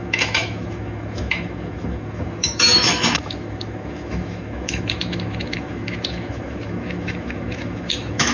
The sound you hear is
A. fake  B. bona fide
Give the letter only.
A